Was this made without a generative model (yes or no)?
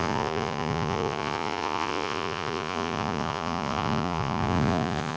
no